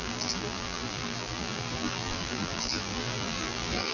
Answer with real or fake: fake